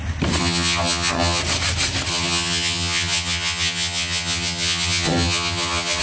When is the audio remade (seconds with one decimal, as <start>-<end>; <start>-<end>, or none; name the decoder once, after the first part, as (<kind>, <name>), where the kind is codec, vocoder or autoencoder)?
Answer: 0.4-1.4 (vocoder, HiFi-GAN); 2.1-6.0